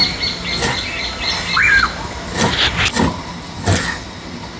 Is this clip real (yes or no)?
yes